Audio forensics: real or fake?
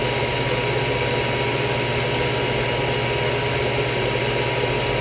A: real